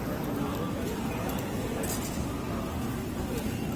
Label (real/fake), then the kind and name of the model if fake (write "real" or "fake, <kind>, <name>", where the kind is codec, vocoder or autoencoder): real